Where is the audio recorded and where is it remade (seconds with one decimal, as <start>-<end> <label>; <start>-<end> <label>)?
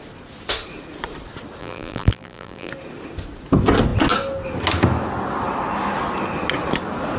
0.0-1.6 recorded; 1.6-2.7 remade; 2.7-7.2 recorded